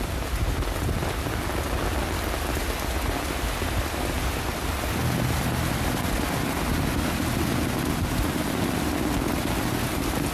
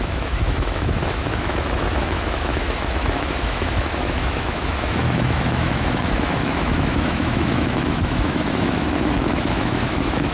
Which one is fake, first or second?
second